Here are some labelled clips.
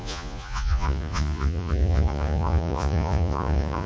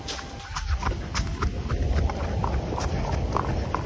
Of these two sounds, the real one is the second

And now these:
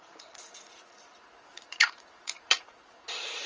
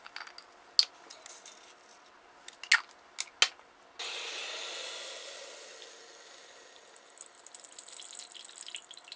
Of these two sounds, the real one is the second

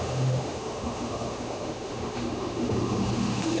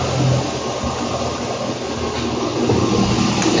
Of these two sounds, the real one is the second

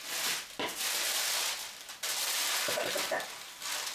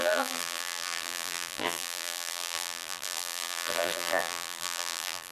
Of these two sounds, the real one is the first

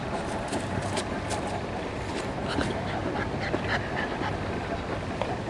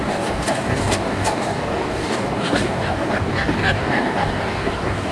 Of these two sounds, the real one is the first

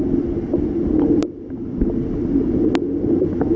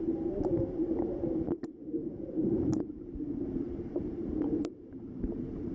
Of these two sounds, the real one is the first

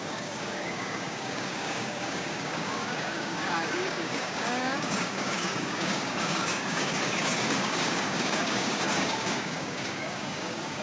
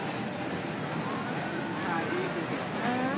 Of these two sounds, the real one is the second